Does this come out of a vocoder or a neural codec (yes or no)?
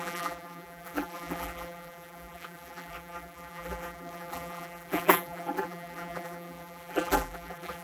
yes